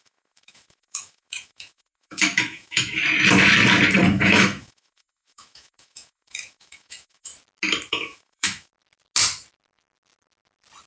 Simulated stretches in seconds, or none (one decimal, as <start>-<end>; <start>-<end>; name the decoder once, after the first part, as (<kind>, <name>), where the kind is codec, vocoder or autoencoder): 0.0-3.0 (autoencoder, DAC-VAE); 4.1-7.3; 7.9-8.7